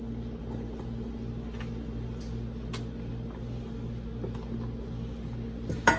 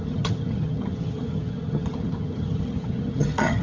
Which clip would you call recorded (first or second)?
first